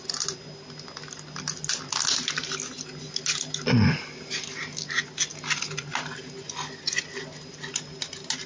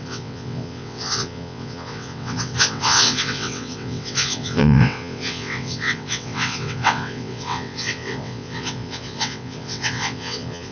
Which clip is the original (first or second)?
first